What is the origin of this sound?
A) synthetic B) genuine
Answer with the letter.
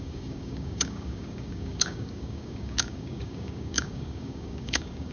A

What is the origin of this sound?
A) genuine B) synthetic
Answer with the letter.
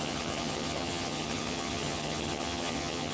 B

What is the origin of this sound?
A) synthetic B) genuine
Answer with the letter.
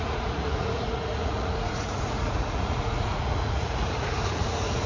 A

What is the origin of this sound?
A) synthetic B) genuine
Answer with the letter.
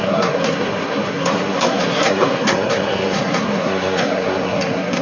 A